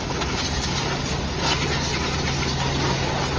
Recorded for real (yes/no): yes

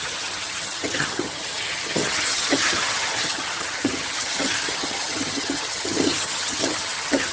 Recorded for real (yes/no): no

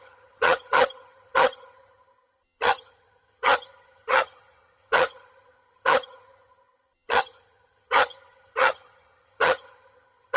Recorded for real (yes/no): no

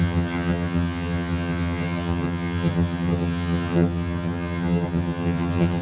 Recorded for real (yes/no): no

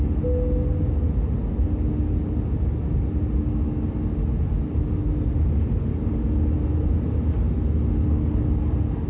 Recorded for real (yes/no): yes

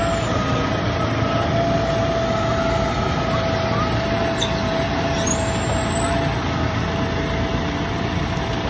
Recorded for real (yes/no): yes